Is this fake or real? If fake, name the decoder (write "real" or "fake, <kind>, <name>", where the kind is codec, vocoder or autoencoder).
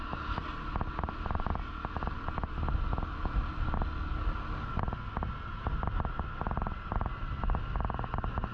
real